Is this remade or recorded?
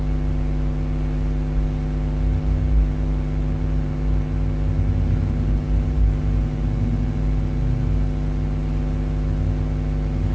recorded